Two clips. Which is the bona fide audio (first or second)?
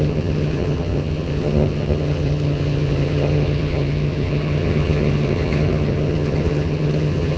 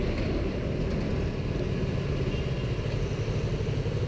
second